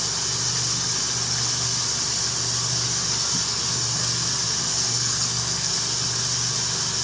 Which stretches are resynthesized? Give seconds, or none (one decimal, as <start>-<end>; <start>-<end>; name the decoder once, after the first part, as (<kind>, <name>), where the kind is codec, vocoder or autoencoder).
4.6-5.7 (codec, SNAC)